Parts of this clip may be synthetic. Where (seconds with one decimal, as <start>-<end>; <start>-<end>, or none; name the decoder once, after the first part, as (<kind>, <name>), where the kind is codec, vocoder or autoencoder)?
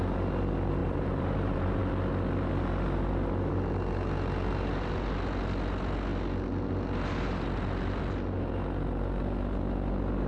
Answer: 0.8-1.8 (vocoder, BigVGAN v2)